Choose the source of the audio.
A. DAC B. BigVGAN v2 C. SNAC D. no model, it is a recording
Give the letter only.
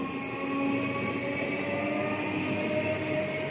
D